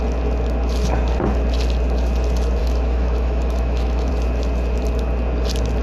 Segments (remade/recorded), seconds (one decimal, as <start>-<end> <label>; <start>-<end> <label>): 0.0-2.6 recorded; 2.6-4.1 remade; 4.1-5.8 recorded